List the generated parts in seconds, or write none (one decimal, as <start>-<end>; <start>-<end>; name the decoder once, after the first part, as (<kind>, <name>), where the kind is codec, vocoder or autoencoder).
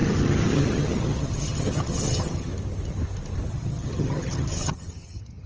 0.0-2.5 (vocoder, HiFi-GAN); 3.5-5.5